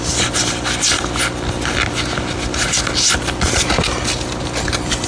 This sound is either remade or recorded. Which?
recorded